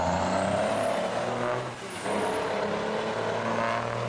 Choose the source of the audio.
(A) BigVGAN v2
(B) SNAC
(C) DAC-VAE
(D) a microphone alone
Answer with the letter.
D